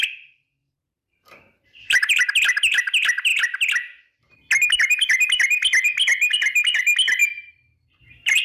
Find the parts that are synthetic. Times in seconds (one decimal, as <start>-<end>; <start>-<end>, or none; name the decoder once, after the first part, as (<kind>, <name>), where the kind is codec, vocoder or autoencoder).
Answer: 0.6-2.2 (vocoder, BigVGAN v2); 7.2-8.4